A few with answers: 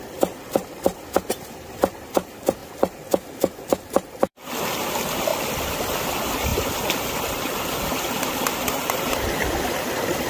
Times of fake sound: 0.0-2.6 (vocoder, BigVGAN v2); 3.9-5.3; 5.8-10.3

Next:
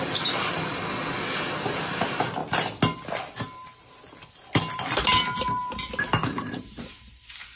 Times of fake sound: 0.0-0.8 (vocoder, BigVGAN v2); 1.7-2.4; 6.0-7.6

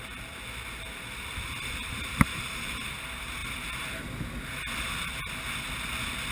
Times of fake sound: 1.8-2.9 (vocoder, BigVGAN v2)